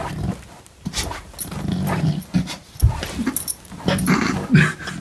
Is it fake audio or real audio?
real